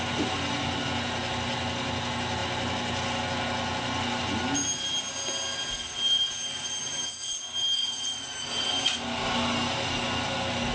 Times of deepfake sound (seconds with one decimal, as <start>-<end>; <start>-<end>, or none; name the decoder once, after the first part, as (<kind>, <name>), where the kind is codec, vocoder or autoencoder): none

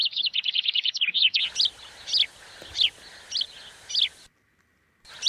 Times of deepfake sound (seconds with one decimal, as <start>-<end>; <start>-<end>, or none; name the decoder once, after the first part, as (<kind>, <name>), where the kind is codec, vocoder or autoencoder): 0.0-1.4 (codec, DAC)

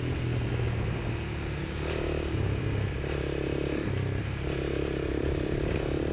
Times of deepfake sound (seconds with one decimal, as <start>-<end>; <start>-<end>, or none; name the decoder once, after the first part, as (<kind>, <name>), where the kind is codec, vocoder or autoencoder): 1.6-2.6 (codec, DAC)

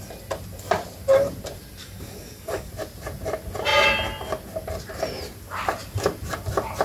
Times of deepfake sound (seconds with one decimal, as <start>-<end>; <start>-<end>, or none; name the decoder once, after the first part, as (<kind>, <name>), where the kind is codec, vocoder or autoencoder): 1.8-2.7 (codec, DAC)

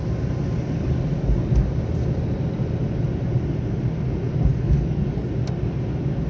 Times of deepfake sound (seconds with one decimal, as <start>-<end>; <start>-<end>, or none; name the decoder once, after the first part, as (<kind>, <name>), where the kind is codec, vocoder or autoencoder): 4.5-5.3 (codec, DAC)

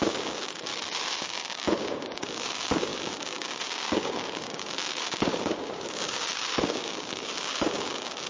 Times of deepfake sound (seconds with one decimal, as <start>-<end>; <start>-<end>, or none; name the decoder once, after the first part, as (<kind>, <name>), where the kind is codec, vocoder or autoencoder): 0.0-0.7 (codec, DAC); 1.2-8.3

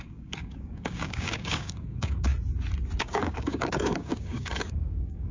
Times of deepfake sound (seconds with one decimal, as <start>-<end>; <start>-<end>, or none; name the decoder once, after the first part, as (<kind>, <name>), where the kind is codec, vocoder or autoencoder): 0.0-2.3 (codec, DAC); 3.0-5.3

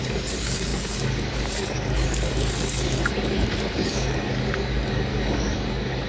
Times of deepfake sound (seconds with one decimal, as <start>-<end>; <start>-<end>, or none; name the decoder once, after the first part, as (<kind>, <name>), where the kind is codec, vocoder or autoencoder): 0.0-6.1 (codec, DAC)